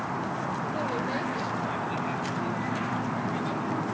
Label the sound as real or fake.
real